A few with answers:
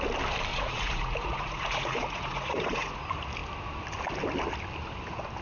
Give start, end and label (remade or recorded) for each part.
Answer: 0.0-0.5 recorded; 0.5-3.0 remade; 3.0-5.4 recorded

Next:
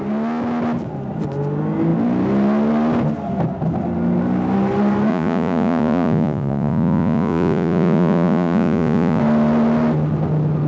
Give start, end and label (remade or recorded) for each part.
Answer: 0.0-5.1 recorded; 5.1-9.2 remade; 9.2-10.7 recorded